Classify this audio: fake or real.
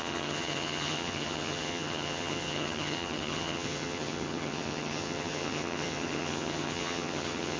fake